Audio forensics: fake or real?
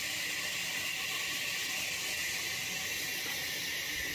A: real